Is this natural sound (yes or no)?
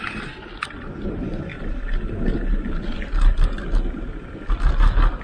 no